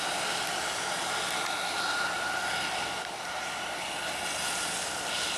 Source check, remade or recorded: recorded